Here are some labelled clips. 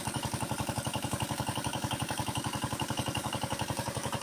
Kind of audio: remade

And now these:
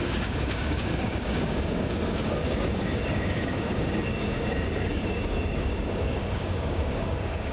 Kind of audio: remade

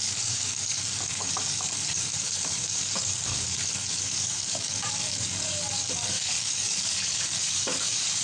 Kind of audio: remade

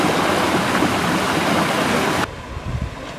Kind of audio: recorded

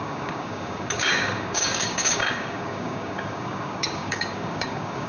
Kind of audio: remade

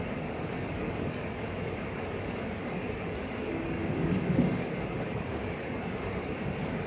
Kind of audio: remade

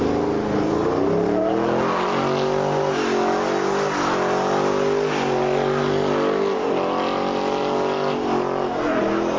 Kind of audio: recorded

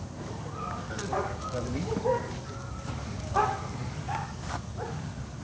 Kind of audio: remade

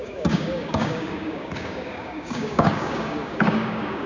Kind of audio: remade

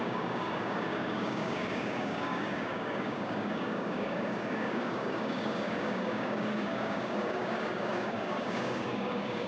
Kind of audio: remade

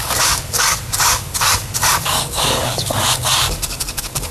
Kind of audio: remade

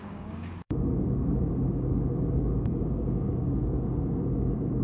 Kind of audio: remade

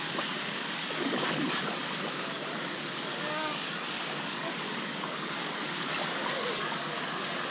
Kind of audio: remade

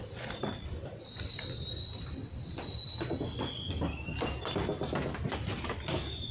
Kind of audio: recorded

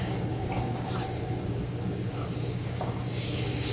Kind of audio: remade